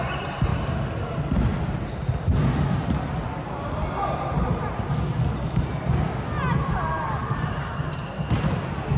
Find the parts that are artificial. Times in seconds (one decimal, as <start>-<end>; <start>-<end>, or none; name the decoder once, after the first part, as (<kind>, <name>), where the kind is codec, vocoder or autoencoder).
none